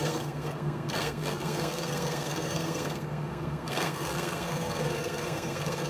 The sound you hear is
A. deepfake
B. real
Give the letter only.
A